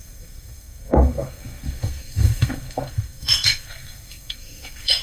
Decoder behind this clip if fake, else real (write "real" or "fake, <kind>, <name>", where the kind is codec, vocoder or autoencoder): fake, codec, SNAC